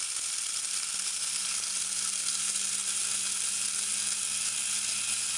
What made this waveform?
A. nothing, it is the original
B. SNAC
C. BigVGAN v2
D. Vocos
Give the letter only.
A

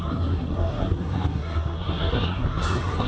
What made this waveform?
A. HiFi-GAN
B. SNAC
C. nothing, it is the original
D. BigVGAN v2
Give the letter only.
B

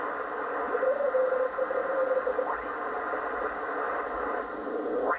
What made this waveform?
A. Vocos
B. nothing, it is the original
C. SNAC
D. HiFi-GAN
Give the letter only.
B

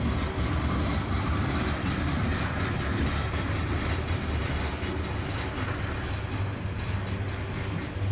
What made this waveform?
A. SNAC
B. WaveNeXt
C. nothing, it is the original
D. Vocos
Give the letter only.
C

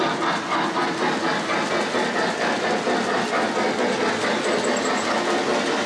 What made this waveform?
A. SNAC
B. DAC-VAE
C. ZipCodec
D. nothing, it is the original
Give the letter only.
D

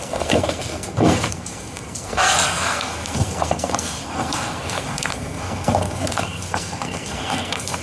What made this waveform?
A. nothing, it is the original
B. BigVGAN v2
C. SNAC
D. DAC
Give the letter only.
C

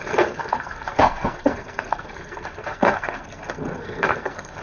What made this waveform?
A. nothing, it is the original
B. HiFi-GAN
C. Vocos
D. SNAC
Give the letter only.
D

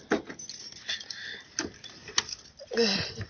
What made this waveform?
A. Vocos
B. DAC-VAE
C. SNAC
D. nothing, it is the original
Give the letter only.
D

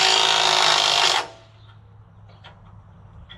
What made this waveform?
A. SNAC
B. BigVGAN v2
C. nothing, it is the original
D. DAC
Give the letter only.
C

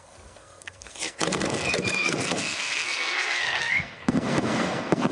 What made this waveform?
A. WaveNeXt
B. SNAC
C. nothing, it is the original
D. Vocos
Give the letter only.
B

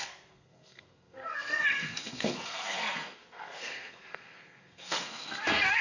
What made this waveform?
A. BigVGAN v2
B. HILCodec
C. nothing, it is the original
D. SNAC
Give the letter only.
D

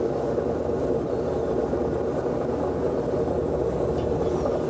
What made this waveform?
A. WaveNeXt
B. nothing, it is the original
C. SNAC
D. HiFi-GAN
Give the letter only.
B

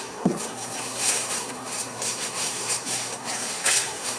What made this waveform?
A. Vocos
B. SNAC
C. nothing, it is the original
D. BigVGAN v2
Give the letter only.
B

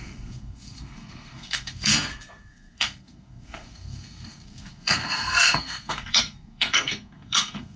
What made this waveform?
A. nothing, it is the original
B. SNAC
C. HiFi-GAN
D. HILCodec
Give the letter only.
B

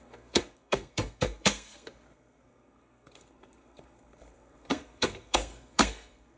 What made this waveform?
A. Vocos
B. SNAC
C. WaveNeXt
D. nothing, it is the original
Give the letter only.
B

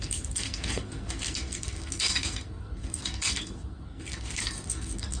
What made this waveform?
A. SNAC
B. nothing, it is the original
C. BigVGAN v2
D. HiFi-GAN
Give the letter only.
A